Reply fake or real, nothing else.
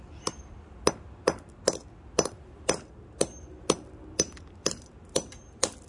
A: real